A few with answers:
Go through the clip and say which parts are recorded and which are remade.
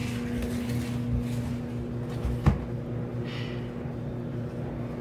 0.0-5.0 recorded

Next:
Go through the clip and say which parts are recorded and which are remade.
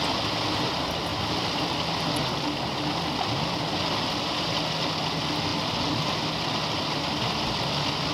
0.0-8.1 recorded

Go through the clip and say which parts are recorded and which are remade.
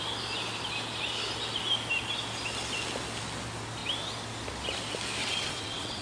0.0-5.2 recorded; 5.2-6.0 remade